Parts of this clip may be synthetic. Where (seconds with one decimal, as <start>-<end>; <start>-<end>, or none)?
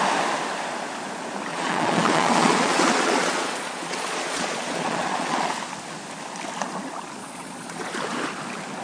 1.5-5.5; 7.2-7.9